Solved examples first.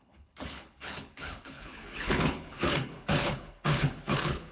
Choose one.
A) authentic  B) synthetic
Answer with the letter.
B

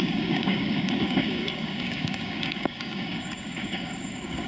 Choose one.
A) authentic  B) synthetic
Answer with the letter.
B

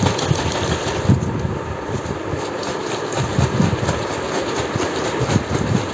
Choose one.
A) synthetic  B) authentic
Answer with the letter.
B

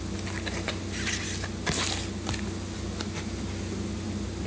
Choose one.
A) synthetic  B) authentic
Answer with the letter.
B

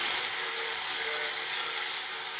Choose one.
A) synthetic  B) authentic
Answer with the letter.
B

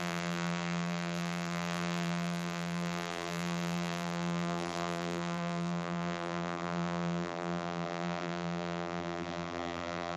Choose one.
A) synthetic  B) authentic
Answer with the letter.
A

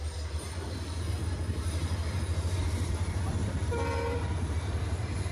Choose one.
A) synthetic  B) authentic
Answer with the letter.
A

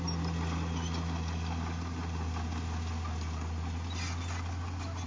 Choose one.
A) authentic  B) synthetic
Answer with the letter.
A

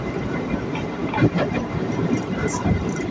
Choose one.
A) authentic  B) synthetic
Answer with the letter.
B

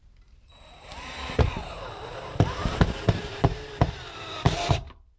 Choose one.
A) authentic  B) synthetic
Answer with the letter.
B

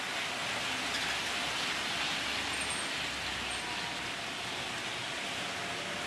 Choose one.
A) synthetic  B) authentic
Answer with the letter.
B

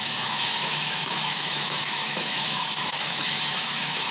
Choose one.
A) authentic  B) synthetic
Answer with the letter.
B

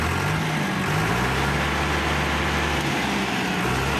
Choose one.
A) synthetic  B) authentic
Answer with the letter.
B